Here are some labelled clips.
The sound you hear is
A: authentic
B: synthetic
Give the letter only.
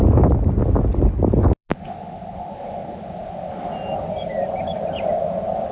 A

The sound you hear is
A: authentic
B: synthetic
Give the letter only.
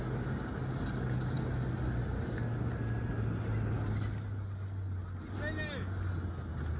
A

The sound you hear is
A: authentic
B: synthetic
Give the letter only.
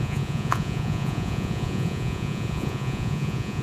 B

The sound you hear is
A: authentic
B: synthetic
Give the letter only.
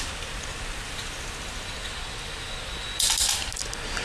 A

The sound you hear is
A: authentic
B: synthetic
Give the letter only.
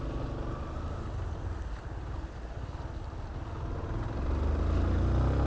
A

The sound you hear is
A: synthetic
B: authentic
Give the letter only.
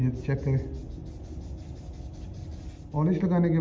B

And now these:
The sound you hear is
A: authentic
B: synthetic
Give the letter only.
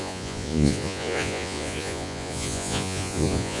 B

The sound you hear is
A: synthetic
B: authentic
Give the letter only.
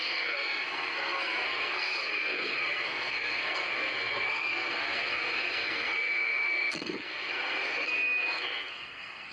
A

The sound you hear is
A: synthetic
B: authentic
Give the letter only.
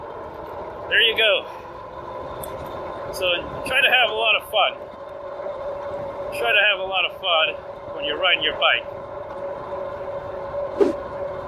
B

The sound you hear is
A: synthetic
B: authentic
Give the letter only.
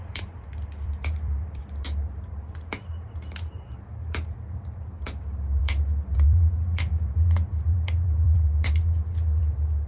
A